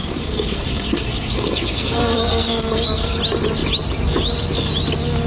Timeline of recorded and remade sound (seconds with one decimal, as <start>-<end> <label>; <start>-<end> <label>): 0.0-3.2 remade; 3.2-5.3 recorded